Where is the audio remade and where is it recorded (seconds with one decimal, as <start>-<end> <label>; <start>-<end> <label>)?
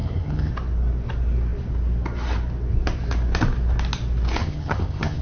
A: 0.0-0.5 remade; 0.5-4.4 recorded; 4.4-5.2 remade